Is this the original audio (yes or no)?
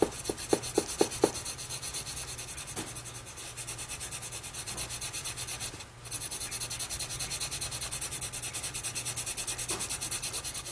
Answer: yes